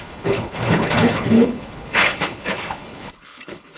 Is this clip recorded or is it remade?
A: remade